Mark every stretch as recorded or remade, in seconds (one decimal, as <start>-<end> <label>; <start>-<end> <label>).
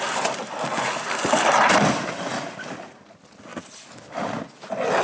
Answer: 0.0-5.0 recorded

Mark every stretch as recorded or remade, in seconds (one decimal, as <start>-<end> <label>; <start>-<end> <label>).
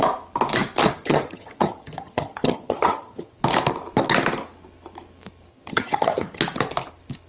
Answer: 0.0-0.9 recorded; 0.9-3.4 remade; 3.4-5.5 recorded; 5.5-6.4 remade; 6.4-7.3 recorded